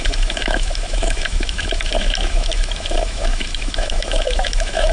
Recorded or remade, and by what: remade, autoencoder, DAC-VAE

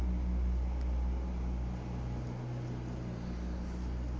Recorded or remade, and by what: recorded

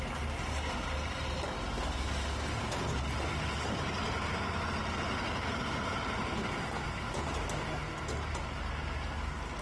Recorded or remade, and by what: recorded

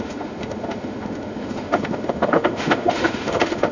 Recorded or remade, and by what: remade, autoencoder, DAC-VAE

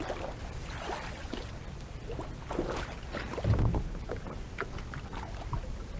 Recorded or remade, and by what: recorded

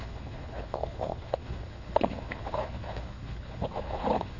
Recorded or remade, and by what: remade, codec, HILCodec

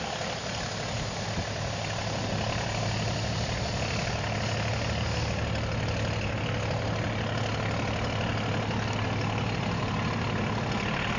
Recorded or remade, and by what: recorded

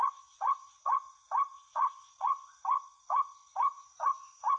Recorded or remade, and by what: remade, vocoder, WaveNeXt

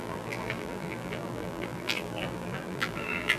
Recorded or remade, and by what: remade, vocoder, BigVGAN v2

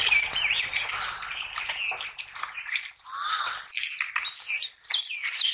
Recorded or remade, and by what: recorded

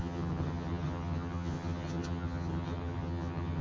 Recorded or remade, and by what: remade, vocoder, HiFi-GAN